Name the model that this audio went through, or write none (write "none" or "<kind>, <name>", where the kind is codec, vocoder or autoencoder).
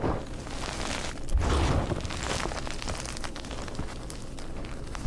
none